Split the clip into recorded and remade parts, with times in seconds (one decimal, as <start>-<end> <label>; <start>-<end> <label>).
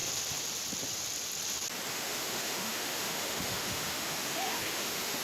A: 0.0-1.9 recorded; 1.9-5.2 remade